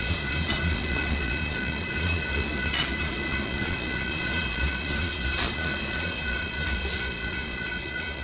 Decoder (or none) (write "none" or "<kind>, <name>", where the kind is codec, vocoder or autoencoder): vocoder, Vocos